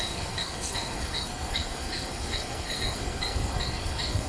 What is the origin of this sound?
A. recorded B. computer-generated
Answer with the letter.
B